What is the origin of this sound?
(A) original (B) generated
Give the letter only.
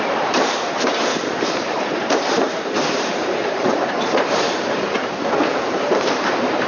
B